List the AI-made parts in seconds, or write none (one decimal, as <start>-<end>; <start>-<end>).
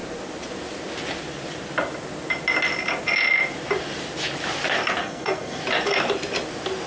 5.0-5.6